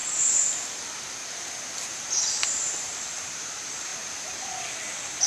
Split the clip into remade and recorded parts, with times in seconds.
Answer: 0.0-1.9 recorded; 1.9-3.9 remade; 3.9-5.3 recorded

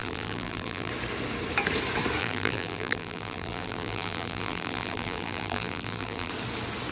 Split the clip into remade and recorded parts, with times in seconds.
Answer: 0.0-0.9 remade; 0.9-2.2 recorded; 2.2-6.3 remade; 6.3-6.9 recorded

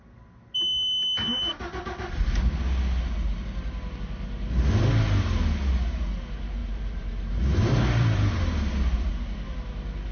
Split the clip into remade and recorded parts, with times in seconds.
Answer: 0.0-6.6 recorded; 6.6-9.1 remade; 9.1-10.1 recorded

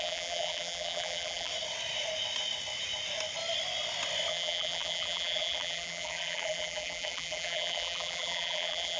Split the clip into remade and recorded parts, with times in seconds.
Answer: 0.0-1.5 remade; 1.5-4.3 recorded; 4.3-9.0 remade